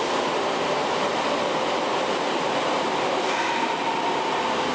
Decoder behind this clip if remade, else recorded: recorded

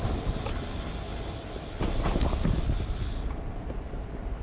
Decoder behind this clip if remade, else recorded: recorded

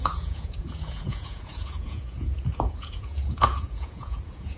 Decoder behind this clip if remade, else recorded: remade, vocoder, Vocos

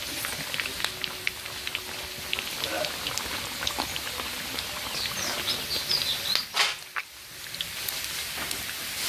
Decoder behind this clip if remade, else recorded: recorded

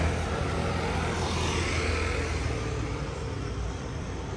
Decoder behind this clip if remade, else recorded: recorded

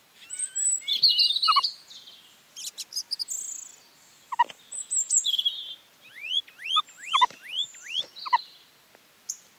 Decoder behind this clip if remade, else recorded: recorded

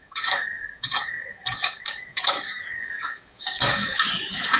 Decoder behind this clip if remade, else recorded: remade, codec, DAC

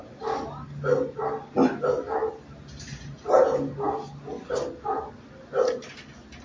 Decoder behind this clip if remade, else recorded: recorded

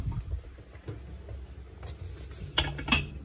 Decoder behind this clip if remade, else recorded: recorded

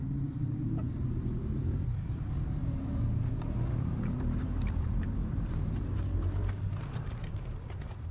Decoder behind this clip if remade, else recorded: remade, vocoder, BigVGAN v2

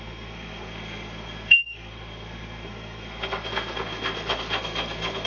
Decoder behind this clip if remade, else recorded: remade, codec, SNAC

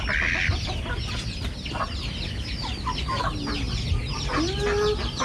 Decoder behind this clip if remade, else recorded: recorded